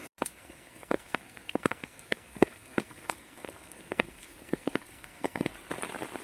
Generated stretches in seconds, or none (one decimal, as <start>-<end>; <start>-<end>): 0.0-5.5